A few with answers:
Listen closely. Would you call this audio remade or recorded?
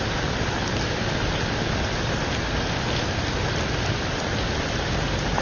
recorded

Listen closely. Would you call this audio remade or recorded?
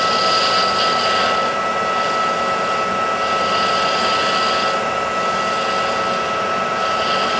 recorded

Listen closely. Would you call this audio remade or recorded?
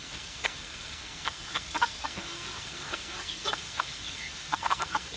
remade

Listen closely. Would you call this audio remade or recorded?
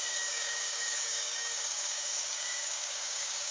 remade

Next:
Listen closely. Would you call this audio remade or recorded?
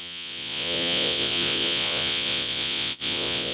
remade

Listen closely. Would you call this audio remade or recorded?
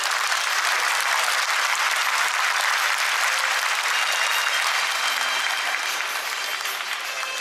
recorded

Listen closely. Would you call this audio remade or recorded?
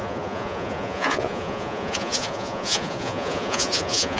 remade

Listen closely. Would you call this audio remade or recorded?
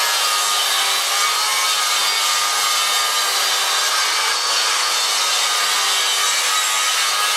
recorded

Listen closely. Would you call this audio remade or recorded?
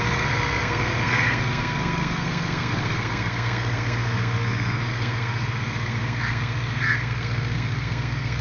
remade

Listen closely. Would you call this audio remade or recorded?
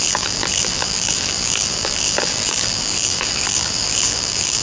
remade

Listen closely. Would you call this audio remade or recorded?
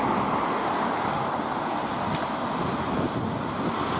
recorded